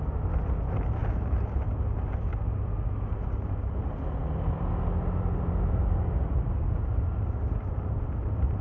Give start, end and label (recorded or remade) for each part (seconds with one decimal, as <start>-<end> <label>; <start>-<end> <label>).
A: 0.0-8.6 recorded